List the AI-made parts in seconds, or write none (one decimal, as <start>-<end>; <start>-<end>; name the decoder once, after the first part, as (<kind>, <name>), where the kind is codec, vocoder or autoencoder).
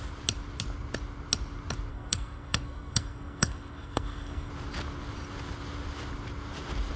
1.9-4.5 (codec, SNAC)